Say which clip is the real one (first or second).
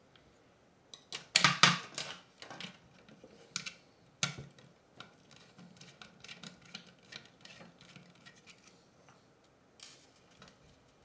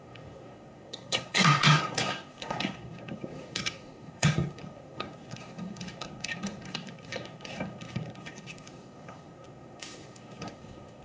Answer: first